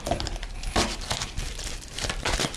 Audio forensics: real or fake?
fake